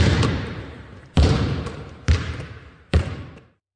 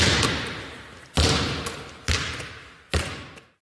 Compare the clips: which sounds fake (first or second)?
first